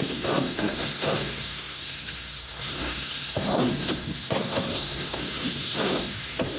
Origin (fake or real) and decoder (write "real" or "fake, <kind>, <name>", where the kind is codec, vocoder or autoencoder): fake, codec, SNAC